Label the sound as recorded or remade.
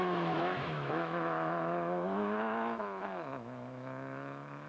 remade